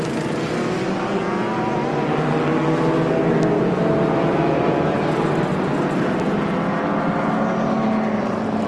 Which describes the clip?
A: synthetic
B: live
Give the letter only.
B